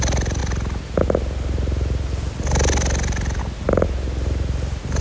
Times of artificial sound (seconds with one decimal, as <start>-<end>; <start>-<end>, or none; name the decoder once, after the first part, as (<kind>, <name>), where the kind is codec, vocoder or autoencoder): none